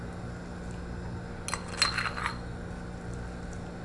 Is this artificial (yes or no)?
no